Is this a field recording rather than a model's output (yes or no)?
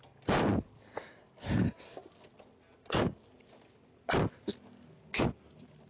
yes